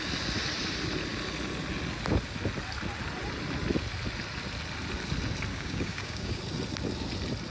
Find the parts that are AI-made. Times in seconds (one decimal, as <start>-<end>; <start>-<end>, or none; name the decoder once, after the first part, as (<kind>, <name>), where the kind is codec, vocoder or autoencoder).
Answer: 5.5-6.4 (codec, DAC)